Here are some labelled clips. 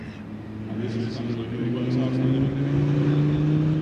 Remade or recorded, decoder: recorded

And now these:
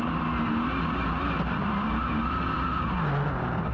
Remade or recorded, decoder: recorded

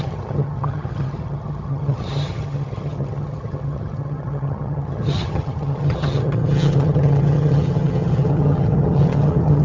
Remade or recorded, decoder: remade, vocoder, HiFi-GAN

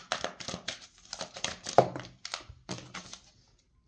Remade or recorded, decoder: recorded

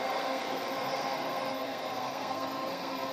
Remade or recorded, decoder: remade, codec, SNAC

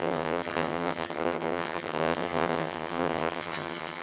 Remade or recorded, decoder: remade, vocoder, HiFi-GAN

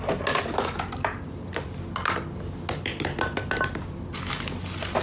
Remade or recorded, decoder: recorded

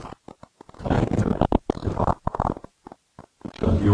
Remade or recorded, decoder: remade, vocoder, BigVGAN v2